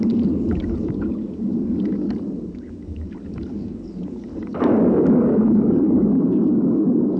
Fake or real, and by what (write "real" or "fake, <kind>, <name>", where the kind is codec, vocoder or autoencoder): fake, codec, DAC